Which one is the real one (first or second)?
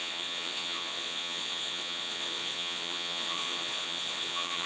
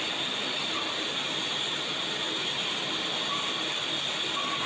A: second